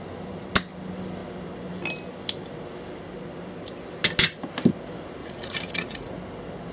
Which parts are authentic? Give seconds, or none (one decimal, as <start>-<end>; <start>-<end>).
0.0-5.2; 6.1-6.7